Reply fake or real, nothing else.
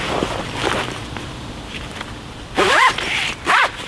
real